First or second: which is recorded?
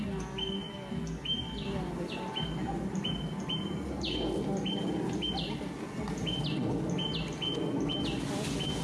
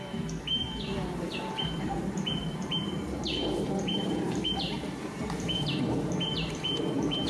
first